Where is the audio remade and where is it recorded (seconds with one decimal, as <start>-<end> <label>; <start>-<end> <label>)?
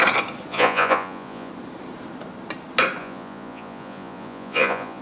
0.0-0.5 recorded; 0.5-1.5 remade; 1.5-3.0 recorded; 3.0-5.0 remade